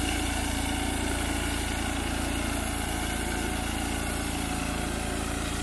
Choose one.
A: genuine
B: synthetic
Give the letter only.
A